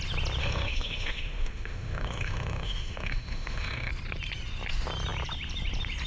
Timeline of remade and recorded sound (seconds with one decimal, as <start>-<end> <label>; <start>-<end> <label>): 0.0-0.4 recorded; 0.4-3.9 remade; 3.9-6.1 recorded